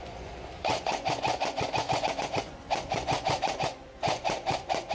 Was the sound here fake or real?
fake